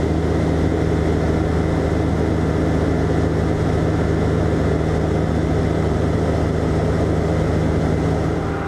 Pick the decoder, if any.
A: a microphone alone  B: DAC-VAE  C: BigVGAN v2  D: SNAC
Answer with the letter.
A